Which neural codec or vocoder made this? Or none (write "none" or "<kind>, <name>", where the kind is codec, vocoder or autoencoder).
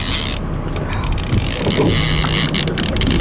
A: none